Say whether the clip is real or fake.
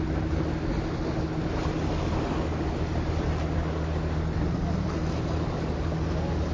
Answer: real